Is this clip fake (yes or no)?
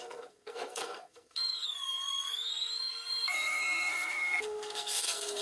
yes